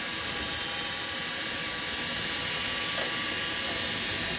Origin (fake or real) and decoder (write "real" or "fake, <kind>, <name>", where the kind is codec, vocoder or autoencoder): real